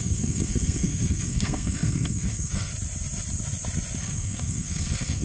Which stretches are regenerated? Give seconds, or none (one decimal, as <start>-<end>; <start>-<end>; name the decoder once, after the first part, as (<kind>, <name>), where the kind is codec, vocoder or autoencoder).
0.0-2.7 (codec, SNAC); 4.0-5.2